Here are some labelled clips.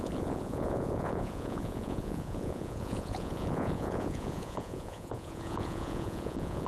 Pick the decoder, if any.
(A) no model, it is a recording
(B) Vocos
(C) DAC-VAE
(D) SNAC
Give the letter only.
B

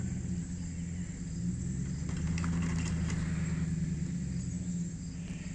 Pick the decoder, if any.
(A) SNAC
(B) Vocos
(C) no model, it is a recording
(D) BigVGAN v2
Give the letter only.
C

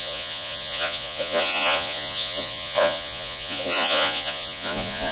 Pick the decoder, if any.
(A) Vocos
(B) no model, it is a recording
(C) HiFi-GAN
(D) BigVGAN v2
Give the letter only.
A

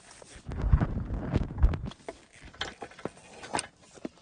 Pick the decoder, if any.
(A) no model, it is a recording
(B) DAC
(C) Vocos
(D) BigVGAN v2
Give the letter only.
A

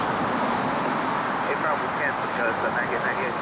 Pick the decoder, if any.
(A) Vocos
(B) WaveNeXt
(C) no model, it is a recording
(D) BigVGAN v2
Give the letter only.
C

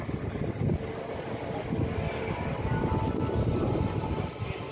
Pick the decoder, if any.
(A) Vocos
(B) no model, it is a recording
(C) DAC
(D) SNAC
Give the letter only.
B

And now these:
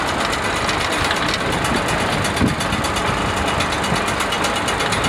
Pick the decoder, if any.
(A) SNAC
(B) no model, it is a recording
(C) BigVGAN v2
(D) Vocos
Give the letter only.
B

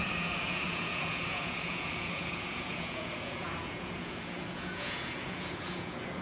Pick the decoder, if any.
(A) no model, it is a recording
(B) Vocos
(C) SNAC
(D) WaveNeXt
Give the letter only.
B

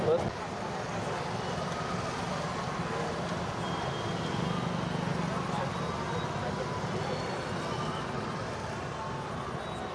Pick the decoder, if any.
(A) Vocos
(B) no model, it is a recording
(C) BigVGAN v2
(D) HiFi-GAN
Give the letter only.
B